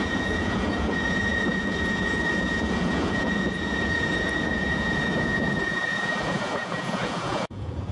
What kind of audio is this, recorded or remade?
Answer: remade